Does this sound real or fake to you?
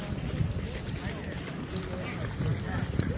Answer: real